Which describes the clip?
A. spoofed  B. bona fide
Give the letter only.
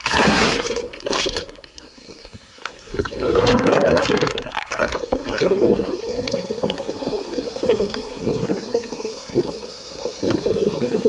A